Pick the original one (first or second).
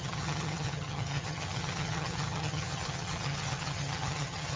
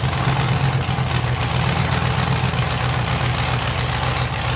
second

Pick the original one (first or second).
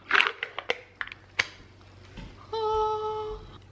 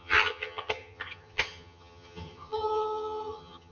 first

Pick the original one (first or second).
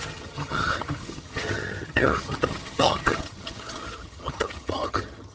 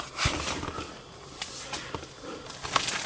second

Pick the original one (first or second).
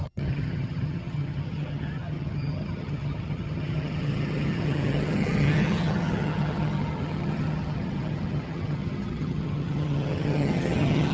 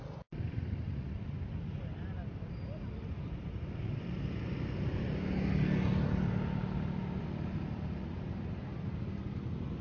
second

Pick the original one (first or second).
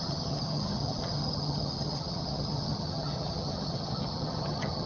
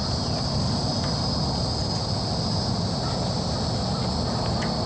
second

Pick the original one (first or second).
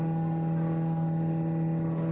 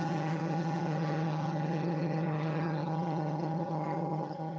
first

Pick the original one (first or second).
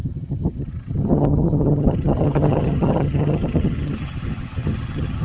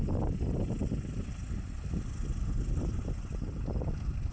second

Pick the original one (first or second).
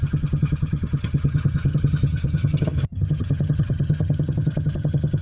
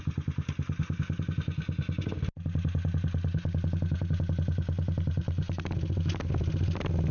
second